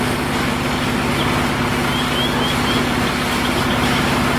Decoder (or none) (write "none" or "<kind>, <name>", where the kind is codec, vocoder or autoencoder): none